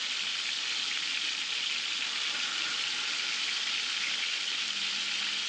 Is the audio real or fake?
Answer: real